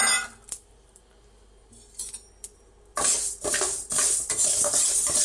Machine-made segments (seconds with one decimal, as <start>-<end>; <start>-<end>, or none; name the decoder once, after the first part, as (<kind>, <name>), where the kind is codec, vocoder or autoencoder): none